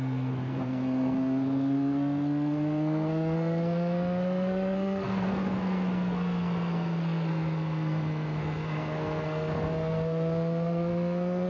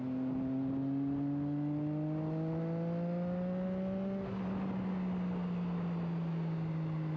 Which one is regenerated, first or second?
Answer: first